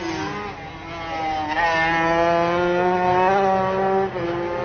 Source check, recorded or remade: recorded